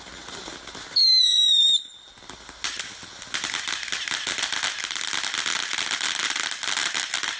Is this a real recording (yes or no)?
yes